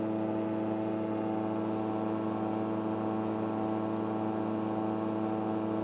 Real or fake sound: real